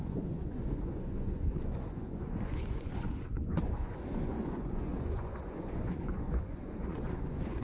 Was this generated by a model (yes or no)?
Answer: yes